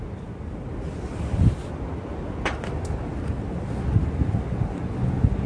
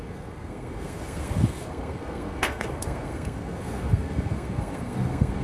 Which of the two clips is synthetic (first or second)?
second